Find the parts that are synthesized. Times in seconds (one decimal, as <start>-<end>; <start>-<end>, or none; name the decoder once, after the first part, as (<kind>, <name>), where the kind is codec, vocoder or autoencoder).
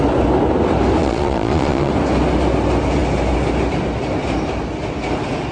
1.0-1.9 (vocoder, Vocos)